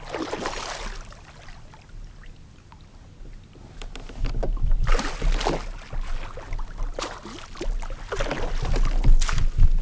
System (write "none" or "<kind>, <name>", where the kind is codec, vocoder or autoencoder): none